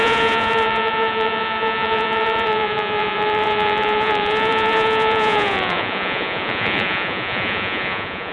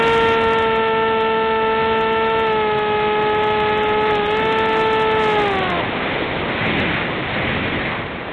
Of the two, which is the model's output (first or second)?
first